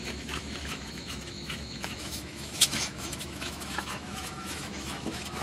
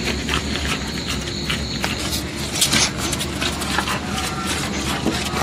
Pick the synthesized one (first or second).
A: first